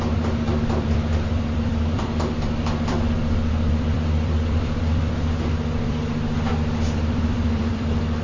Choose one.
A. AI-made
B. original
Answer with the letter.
A